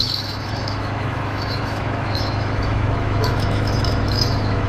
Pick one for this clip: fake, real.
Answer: fake